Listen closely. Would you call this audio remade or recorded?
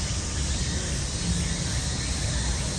recorded